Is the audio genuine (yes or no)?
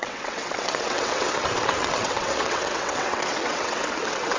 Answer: no